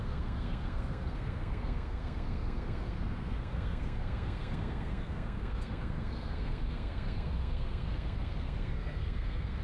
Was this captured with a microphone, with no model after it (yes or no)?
no